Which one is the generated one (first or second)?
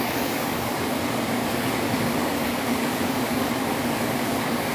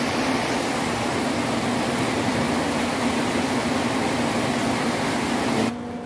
first